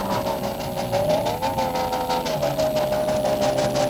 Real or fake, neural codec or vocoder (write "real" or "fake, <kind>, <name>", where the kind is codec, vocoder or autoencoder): real